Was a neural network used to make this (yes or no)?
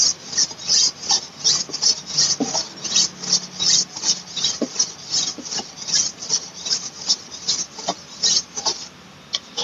no